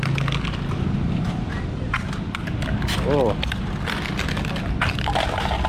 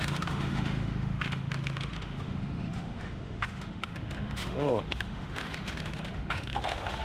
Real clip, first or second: first